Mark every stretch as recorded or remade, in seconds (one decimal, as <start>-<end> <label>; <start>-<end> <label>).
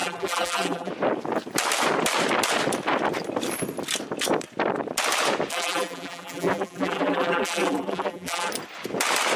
0.0-0.9 remade; 0.9-5.5 recorded; 5.5-8.5 remade; 8.5-9.4 recorded